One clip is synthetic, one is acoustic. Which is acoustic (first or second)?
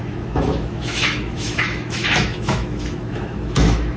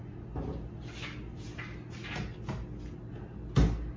second